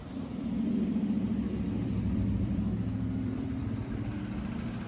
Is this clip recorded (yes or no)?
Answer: no